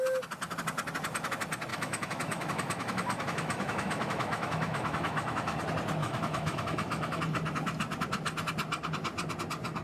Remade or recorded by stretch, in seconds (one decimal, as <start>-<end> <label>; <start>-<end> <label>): 0.0-1.7 recorded; 1.7-5.6 remade; 5.6-6.0 recorded; 6.0-7.2 remade; 7.2-9.8 recorded